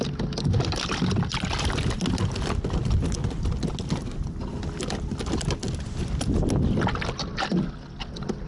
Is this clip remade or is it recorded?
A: recorded